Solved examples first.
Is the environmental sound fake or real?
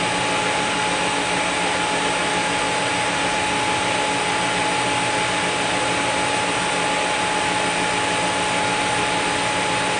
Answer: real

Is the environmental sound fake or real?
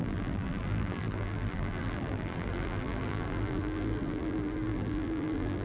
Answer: fake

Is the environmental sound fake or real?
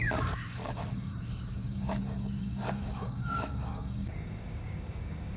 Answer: fake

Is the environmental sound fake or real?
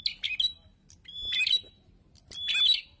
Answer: real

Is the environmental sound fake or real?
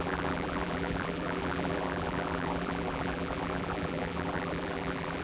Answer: fake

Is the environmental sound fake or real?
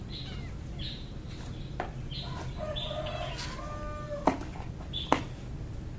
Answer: real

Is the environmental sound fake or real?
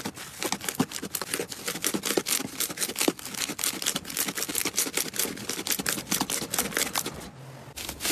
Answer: real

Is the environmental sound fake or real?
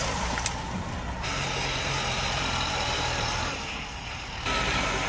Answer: fake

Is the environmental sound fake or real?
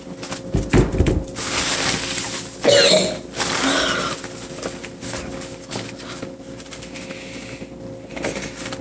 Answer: real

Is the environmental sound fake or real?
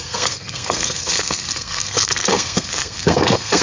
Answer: fake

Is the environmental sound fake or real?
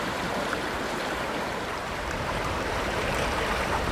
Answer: fake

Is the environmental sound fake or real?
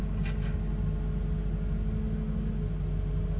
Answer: real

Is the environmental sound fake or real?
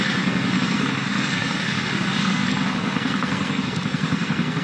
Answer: fake